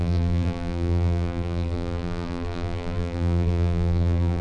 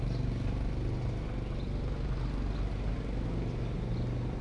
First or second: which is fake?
first